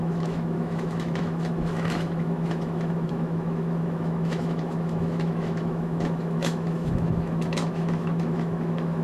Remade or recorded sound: remade